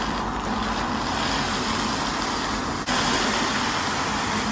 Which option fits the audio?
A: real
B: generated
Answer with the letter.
A